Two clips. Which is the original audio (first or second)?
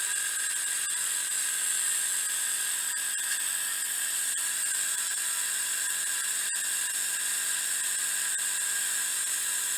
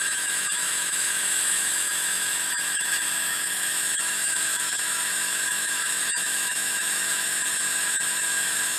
first